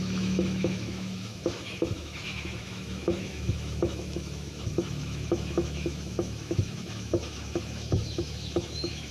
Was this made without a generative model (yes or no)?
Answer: no